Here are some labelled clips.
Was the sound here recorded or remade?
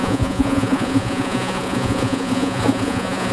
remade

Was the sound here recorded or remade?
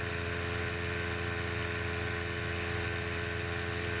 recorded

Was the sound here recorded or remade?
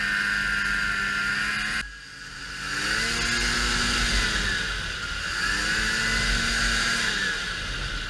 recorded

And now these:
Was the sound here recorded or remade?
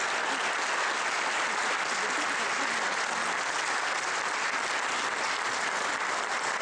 recorded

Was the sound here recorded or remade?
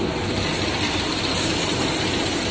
recorded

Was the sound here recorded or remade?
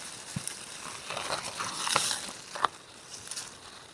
recorded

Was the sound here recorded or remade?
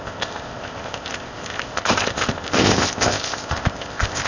remade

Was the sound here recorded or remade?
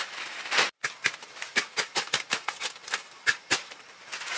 recorded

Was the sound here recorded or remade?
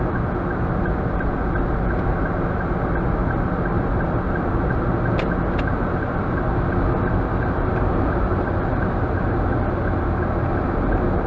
recorded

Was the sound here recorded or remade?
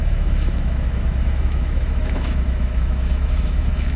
remade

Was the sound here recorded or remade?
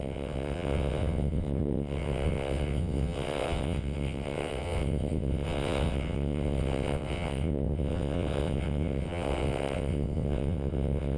remade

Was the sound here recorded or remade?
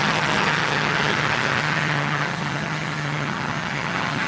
remade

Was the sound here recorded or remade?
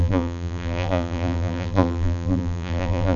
remade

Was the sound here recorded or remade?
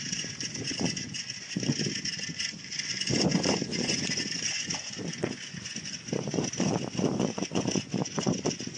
remade